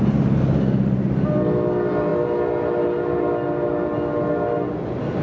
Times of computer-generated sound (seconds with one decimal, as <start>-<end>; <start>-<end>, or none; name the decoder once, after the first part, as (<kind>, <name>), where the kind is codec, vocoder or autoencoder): none